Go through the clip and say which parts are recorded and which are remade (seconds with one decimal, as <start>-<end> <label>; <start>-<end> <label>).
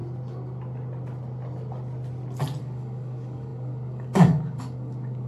0.0-2.6 recorded; 2.6-5.3 remade